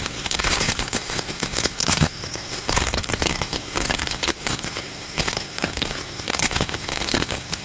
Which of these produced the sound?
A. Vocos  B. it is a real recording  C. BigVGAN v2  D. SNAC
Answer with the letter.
D